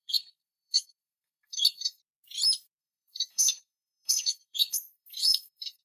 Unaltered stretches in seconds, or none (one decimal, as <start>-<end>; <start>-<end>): 2.0-2.8